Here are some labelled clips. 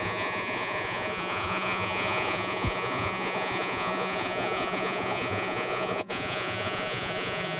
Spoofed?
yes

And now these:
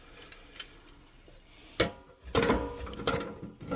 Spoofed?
no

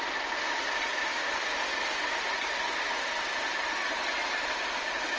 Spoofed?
no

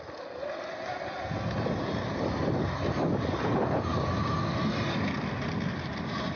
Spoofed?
no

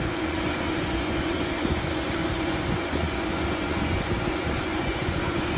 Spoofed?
yes